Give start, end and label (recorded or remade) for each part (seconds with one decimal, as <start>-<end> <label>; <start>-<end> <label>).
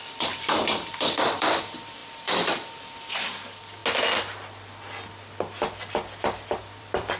0.0-3.8 remade; 3.8-6.6 recorded; 6.6-7.2 remade